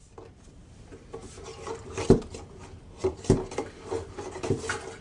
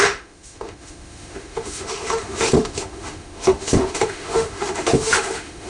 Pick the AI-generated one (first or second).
second